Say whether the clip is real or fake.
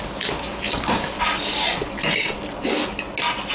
real